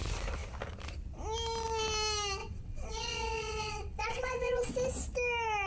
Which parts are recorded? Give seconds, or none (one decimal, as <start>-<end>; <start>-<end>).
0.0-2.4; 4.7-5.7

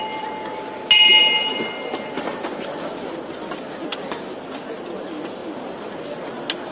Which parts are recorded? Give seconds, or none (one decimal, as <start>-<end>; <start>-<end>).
0.0-6.7

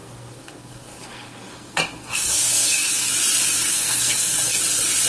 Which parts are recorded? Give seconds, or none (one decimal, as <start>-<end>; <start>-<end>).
3.1-3.7; 4.6-5.1

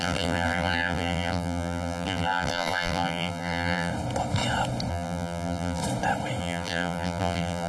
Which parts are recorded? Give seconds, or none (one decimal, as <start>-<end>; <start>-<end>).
3.9-4.9; 5.8-6.4

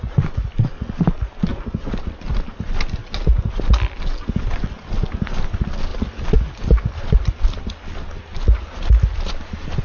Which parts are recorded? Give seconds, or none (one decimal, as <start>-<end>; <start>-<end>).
0.0-9.8

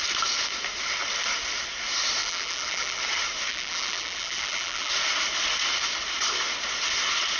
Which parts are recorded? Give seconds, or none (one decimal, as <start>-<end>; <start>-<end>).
0.0-2.2; 3.0-3.5; 4.9-7.4